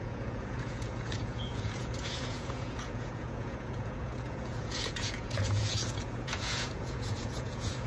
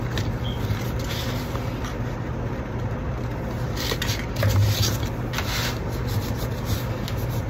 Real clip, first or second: second